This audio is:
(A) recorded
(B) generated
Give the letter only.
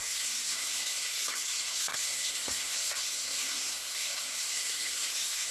B